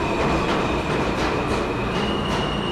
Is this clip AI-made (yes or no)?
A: no